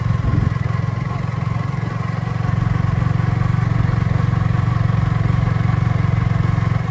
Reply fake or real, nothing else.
real